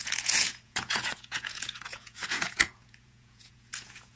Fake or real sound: fake